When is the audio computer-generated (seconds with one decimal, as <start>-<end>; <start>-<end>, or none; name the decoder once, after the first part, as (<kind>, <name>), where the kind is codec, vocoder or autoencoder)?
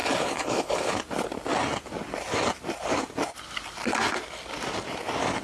0.0-1.0 (codec, HILCodec)